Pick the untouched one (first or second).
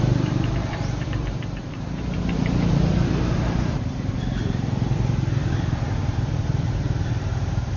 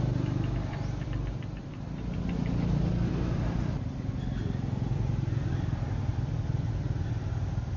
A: second